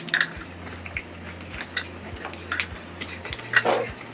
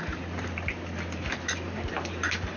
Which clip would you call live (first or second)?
first